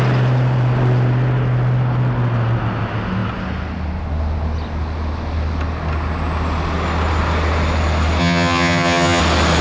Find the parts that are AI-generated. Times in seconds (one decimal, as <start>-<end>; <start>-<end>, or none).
8.2-9.2

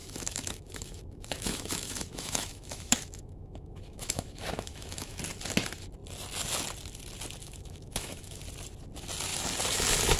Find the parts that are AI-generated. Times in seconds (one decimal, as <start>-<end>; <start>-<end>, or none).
0.0-5.2; 7.4-8.4

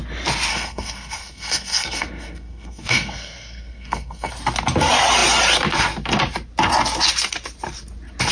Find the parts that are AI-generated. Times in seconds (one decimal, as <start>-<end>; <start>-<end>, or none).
0.5-4.3